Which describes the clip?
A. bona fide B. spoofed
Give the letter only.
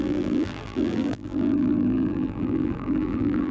B